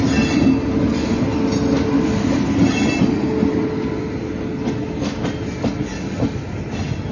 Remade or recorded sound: recorded